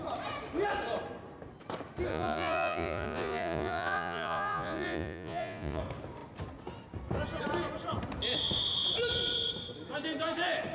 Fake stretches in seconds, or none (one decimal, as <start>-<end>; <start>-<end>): 2.1-5.8